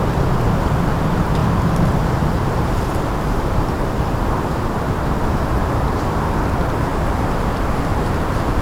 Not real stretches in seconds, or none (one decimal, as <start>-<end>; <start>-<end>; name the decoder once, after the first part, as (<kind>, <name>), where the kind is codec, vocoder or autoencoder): 1.4-6.2 (vocoder, BigVGAN v2); 6.9-7.5; 7.9-8.6